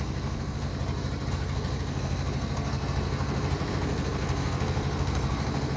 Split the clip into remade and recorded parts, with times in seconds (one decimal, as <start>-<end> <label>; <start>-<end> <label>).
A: 0.0-0.7 remade; 0.7-1.3 recorded; 1.3-5.8 remade

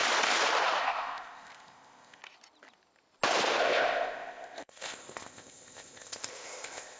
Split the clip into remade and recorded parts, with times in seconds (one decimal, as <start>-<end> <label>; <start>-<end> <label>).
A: 0.0-0.8 recorded; 0.8-2.2 remade; 2.2-3.6 recorded; 3.6-7.0 remade

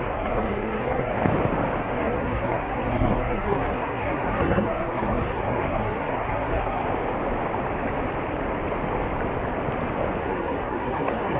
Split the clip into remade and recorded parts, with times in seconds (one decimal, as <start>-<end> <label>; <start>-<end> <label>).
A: 0.0-1.1 remade; 1.1-1.8 recorded; 1.8-6.8 remade; 6.8-10.2 recorded; 10.2-11.4 remade

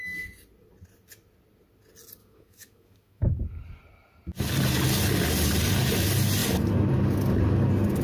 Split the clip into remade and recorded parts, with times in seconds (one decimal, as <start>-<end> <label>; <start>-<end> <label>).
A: 0.0-2.2 recorded; 2.2-3.3 remade; 3.3-8.0 recorded

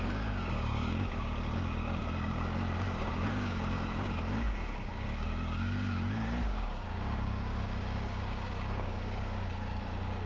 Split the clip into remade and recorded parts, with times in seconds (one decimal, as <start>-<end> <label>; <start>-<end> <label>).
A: 0.0-10.3 remade

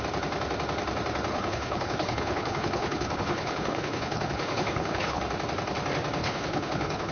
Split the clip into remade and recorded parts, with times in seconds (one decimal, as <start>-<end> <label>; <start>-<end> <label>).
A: 0.0-1.3 recorded; 1.3-5.2 remade; 5.2-6.2 recorded; 6.2-7.1 remade

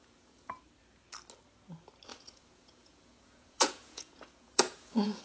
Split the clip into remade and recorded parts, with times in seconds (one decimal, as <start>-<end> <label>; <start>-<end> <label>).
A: 0.0-0.6 remade; 0.6-2.1 recorded; 2.1-5.2 remade